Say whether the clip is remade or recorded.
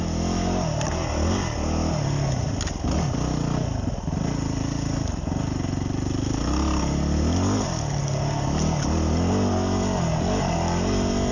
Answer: recorded